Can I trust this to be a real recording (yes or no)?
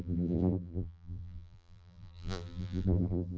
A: no